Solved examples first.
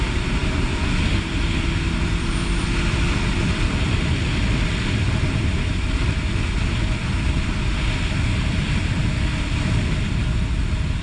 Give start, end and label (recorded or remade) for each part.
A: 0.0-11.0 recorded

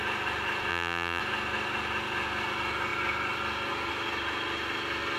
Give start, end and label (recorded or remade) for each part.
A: 0.0-0.7 recorded; 0.7-1.2 remade; 1.2-5.2 recorded

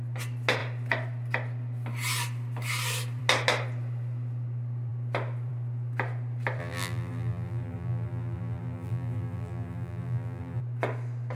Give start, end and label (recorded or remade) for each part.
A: 0.0-6.6 recorded; 6.6-10.6 remade; 10.6-11.4 recorded